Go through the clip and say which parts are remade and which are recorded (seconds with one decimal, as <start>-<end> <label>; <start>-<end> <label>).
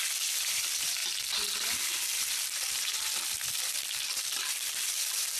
0.0-5.4 recorded